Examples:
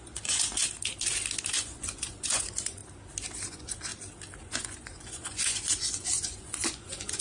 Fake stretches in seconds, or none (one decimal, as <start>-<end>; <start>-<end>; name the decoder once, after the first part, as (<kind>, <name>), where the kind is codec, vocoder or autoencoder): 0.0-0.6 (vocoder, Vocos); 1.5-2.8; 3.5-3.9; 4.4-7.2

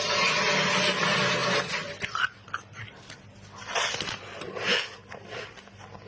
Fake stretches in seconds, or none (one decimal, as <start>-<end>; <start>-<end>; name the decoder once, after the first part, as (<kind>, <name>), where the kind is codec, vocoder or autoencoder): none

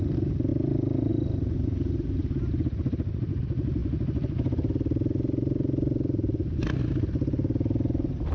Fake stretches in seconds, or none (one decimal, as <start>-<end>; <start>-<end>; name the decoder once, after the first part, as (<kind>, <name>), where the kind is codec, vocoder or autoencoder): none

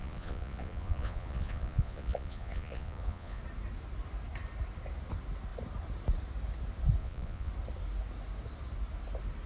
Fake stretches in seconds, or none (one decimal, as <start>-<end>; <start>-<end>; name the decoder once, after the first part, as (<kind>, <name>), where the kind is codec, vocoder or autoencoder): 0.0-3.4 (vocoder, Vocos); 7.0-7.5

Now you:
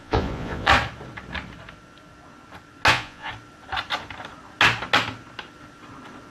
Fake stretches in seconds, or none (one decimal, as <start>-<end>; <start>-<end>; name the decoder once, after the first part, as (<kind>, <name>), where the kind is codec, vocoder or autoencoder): 0.0-0.7 (vocoder, Vocos); 2.9-3.3

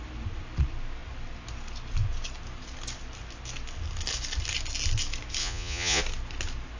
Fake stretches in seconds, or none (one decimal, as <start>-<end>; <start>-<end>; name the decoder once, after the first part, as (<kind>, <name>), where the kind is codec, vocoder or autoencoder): 5.4-6.0 (vocoder, Vocos)

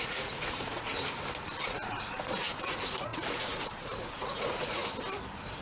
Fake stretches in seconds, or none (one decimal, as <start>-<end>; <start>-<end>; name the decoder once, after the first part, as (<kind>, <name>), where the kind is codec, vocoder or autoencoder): 0.0-0.9 (vocoder, Vocos); 1.6-4.8